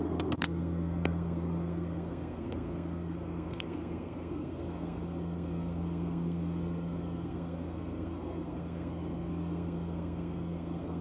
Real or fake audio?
fake